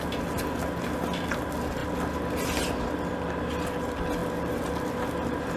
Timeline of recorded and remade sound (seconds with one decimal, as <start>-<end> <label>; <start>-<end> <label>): 0.0-4.2 recorded; 4.2-4.7 remade; 4.7-5.6 recorded